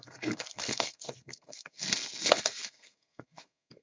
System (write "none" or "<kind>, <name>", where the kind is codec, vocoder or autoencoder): codec, SNAC